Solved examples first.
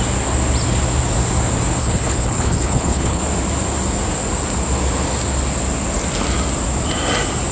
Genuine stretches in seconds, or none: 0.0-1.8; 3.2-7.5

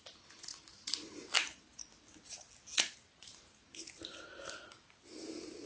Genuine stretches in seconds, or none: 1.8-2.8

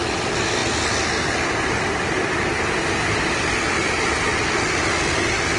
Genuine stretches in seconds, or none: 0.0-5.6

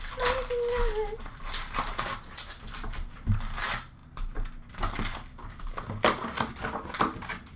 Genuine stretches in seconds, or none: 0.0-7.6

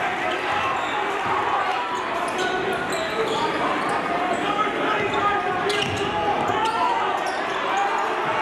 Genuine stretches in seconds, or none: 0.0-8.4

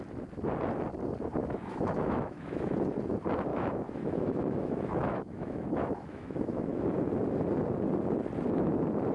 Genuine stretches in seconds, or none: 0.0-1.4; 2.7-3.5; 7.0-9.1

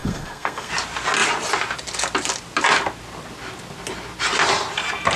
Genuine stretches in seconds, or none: 0.7-5.2

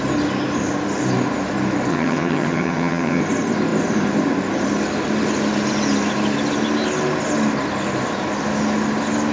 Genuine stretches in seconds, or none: 0.0-1.9; 3.2-9.3